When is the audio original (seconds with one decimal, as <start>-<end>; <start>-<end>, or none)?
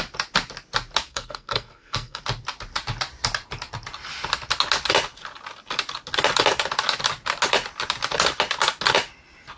0.0-1.1; 2.2-9.6